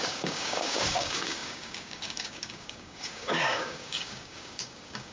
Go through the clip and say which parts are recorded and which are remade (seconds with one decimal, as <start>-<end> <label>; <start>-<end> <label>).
0.0-5.1 remade